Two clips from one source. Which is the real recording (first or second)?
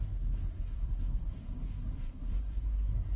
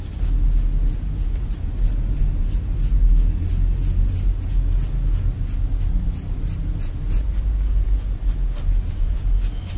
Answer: second